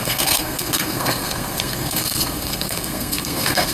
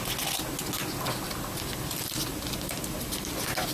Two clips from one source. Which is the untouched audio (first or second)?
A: second